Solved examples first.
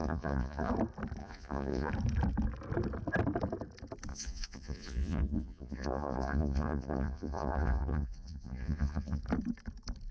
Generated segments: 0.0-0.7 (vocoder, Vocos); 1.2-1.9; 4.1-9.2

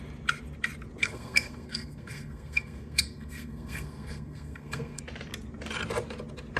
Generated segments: 1.0-5.0 (codec, SNAC)

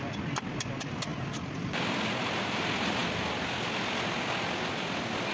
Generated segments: none

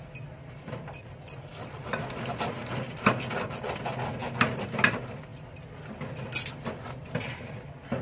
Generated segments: none

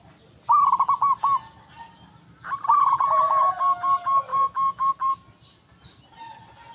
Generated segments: 4.3-4.9 (autoencoder, DAC-VAE)